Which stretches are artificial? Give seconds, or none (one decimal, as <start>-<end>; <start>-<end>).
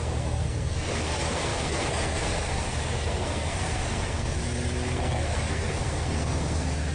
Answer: 0.0-4.4; 4.9-6.9